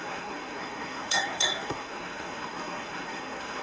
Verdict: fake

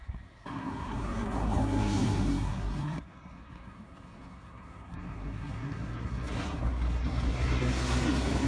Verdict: fake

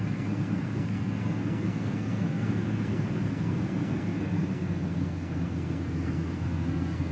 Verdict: fake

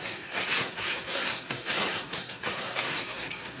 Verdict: fake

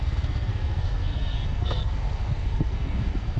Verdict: fake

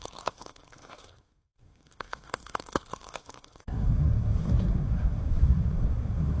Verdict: fake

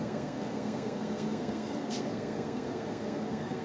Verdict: fake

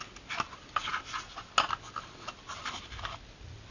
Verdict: real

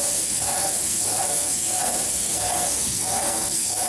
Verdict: fake